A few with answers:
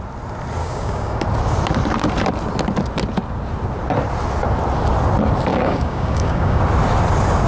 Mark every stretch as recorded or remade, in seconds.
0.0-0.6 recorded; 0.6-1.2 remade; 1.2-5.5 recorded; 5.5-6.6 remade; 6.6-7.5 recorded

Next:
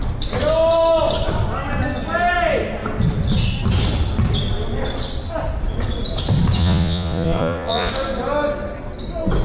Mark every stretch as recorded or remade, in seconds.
0.0-6.6 recorded; 6.6-7.9 remade; 7.9-9.4 recorded